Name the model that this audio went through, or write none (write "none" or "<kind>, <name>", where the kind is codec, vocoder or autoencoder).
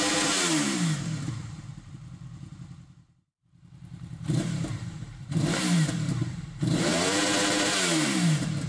vocoder, BigVGAN v2